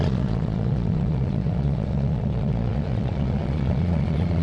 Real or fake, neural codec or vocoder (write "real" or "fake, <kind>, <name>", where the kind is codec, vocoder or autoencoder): fake, vocoder, Vocos